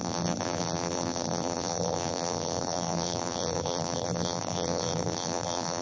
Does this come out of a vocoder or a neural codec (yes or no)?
yes